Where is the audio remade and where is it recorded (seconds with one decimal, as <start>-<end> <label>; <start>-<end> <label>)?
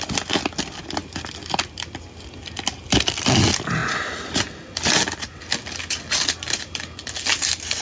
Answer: 0.0-7.8 recorded